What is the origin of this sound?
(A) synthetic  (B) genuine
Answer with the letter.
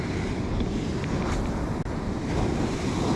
B